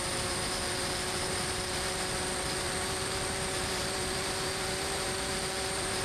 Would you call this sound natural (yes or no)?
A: no